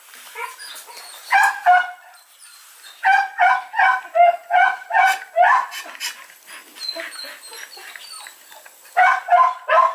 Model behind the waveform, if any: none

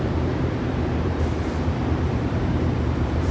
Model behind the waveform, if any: vocoder, BigVGAN v2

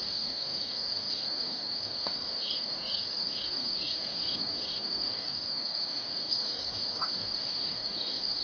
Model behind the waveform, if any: codec, DAC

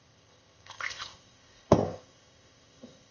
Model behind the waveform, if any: codec, ZipCodec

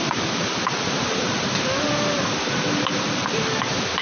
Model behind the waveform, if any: none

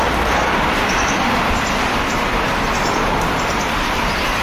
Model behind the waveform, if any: vocoder, BigVGAN v2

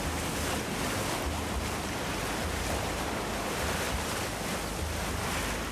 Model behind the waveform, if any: none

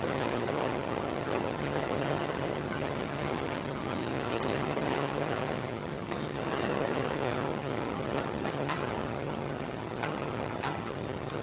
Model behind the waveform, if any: vocoder, HiFi-GAN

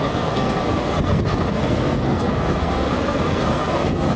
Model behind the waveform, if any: codec, SNAC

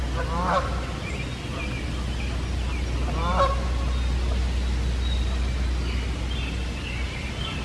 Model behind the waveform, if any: none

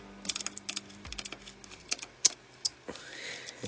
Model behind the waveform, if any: none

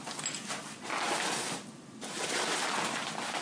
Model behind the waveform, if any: none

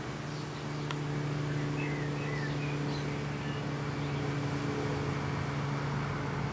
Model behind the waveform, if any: none